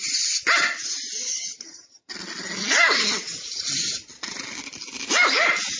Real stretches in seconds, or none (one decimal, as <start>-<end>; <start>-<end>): 0.0-1.3; 2.1-5.8